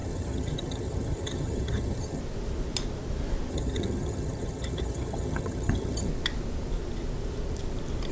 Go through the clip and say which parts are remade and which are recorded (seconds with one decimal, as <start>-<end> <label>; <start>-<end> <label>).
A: 0.0-2.2 remade; 2.2-3.5 recorded; 3.5-6.1 remade; 6.1-8.1 recorded

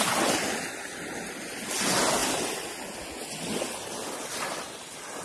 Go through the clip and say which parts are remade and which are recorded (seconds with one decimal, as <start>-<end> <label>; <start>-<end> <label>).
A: 0.0-5.2 recorded